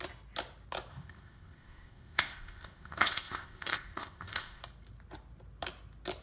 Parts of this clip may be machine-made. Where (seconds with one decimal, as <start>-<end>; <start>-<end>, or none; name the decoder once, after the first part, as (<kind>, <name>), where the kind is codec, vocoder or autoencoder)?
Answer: 0.9-4.6 (codec, ZipCodec)